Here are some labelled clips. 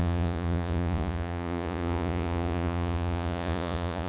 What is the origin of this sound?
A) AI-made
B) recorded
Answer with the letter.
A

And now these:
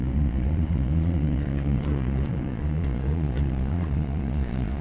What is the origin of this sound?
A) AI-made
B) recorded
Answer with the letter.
A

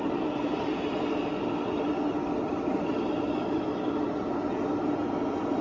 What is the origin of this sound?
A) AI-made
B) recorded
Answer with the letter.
B